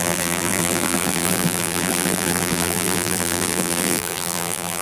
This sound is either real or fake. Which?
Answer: fake